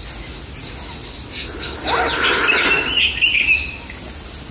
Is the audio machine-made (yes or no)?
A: no